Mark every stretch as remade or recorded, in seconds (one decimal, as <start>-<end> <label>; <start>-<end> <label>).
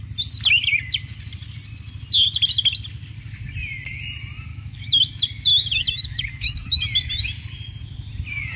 0.0-4.5 recorded; 4.5-5.1 remade; 5.1-5.5 recorded; 5.5-6.8 remade; 6.8-8.6 recorded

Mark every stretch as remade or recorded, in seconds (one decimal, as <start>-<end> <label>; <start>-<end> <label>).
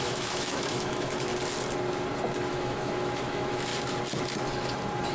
0.0-1.3 remade; 1.3-2.5 recorded; 2.5-3.7 remade; 3.7-5.1 recorded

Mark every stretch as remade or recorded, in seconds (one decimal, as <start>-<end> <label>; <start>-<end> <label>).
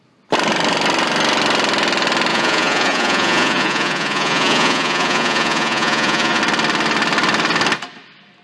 0.0-2.3 recorded; 2.3-6.4 remade; 6.4-8.4 recorded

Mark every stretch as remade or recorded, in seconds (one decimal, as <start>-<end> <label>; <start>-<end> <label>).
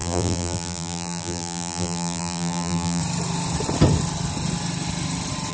0.0-3.0 remade; 3.0-5.5 recorded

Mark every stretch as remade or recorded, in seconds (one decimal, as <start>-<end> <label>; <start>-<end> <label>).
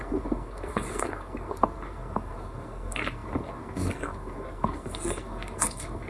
0.0-6.1 remade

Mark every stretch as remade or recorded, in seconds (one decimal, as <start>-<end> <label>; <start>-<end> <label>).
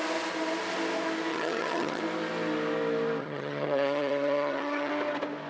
0.0-1.3 recorded; 1.3-2.0 remade; 2.0-3.2 recorded; 3.2-4.9 remade; 4.9-5.5 recorded